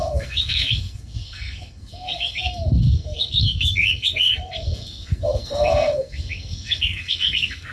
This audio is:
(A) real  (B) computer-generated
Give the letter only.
B